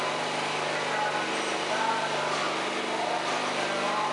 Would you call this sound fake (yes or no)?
no